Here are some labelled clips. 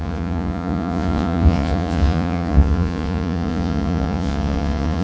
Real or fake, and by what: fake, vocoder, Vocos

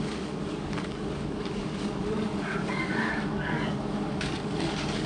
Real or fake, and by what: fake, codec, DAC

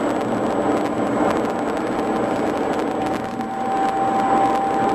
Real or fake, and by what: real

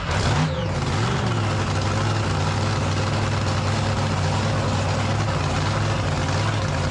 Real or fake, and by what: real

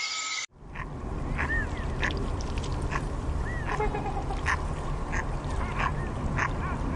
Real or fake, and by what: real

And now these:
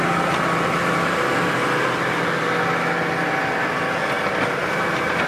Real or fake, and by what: real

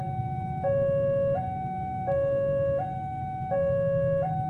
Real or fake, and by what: real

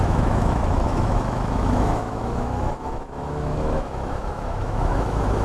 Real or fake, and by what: fake, autoencoder, DAC-VAE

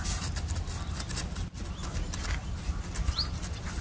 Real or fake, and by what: real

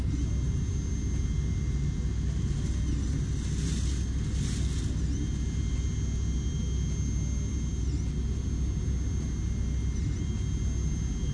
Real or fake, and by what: real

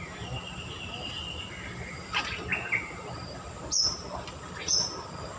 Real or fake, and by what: real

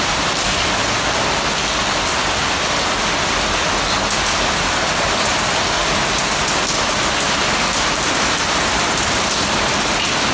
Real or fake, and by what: real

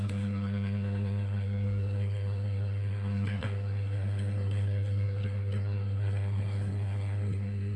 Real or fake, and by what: fake, codec, SNAC